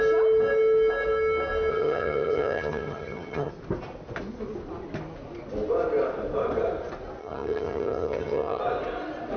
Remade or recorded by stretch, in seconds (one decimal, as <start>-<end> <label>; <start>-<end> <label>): 0.0-1.7 recorded; 1.7-3.5 remade; 3.5-7.2 recorded; 7.2-8.6 remade; 8.6-9.4 recorded